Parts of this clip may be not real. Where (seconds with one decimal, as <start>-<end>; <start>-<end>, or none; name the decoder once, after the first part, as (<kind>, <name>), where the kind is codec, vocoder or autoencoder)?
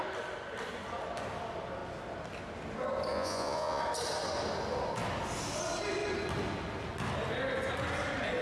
3.1-3.8 (vocoder, Vocos)